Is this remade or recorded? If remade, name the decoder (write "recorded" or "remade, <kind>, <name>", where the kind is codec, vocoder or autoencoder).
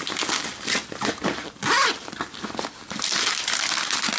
recorded